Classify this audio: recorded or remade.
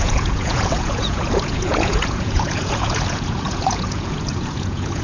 remade